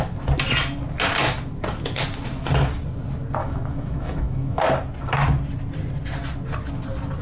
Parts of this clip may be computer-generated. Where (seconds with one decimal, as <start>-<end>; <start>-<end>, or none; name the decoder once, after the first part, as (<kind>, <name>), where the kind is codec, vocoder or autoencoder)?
3.4-4.6 (autoencoder, DAC-VAE)